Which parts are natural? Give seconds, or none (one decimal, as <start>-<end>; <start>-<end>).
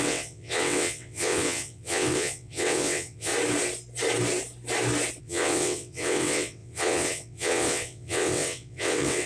3.3-5.2